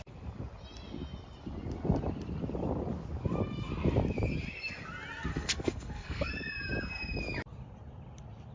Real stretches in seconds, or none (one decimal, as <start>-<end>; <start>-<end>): 0.0-5.3; 6.3-8.5